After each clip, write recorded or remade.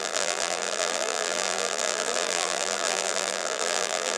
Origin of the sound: remade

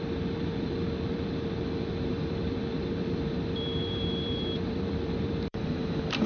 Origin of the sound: remade